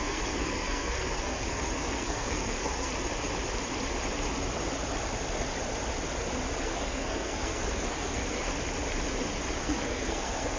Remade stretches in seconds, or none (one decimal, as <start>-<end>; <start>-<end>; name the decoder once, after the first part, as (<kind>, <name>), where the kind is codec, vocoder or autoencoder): 0.0-2.9 (codec, SNAC); 6.6-8.5; 9.6-10.6